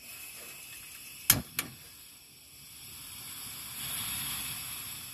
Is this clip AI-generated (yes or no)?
no